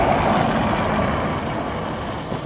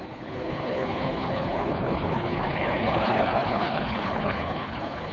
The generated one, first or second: second